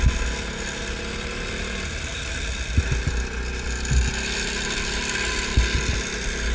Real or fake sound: real